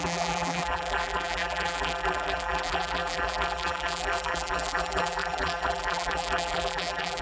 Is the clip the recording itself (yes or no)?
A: no